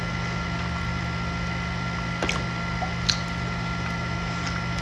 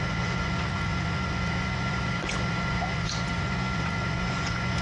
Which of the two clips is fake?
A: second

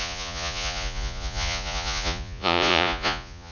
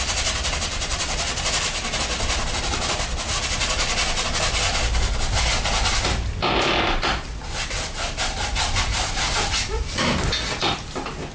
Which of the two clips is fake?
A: first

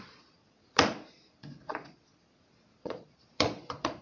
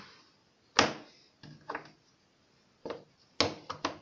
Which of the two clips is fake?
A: first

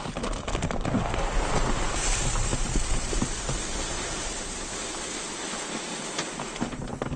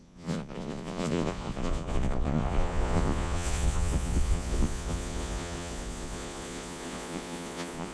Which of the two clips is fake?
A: second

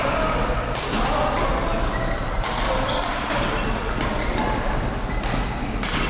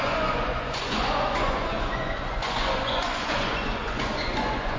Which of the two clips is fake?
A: second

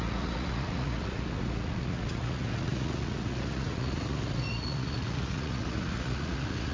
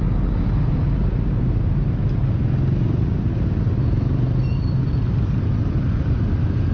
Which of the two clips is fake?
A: first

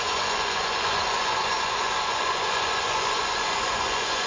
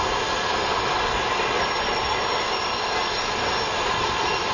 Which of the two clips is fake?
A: first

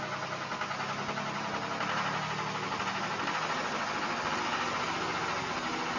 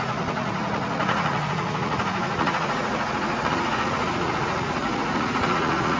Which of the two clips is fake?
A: second